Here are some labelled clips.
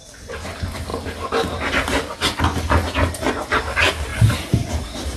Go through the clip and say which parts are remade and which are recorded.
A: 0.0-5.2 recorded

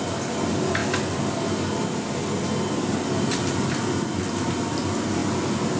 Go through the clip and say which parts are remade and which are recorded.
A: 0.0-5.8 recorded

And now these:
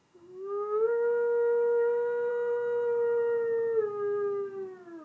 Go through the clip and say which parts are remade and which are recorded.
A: 0.0-2.3 remade; 2.3-5.0 recorded

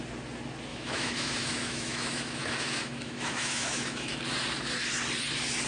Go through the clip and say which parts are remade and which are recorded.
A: 0.0-0.7 recorded; 0.7-4.1 remade; 4.1-5.7 recorded

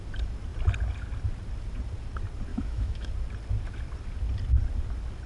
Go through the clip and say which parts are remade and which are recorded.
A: 0.0-2.5 recorded; 2.5-3.1 remade; 3.1-5.3 recorded

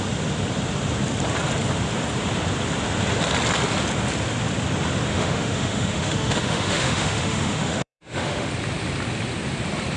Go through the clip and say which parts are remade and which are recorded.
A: 0.0-5.1 recorded; 5.1-8.5 remade; 8.5-10.0 recorded